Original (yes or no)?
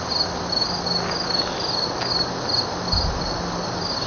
yes